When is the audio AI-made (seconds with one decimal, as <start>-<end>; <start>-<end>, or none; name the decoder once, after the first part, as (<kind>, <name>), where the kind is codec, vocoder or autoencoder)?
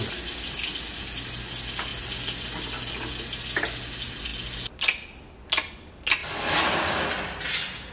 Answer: none